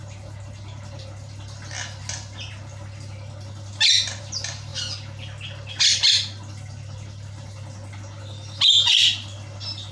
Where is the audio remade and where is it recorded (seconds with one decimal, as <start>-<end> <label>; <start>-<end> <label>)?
0.0-9.9 recorded